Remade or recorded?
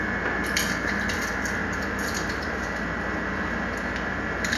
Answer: recorded